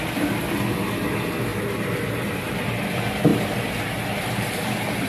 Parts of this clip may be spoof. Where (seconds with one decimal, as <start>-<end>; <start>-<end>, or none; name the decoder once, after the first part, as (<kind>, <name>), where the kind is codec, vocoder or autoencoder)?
3.3-5.1 (vocoder, BigVGAN v2)